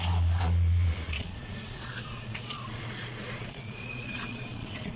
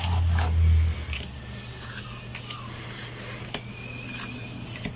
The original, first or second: second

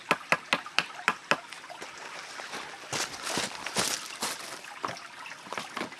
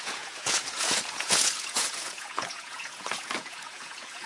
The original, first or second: first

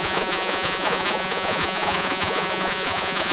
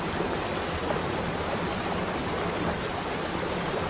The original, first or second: second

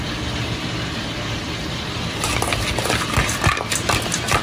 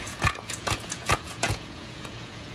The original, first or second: first